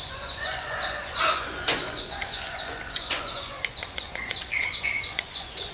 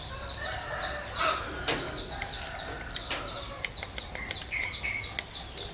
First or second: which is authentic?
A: second